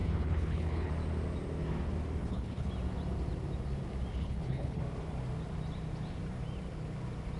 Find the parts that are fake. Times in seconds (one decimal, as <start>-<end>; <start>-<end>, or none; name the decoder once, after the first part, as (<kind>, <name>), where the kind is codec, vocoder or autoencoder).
0.0-0.9 (codec, HILCodec); 2.2-2.7; 4.1-4.8